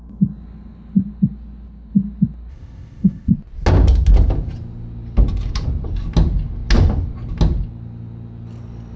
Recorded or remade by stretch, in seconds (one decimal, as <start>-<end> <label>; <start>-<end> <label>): 0.0-2.5 recorded; 2.5-3.3 remade; 3.3-9.0 recorded